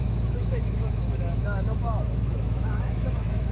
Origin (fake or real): fake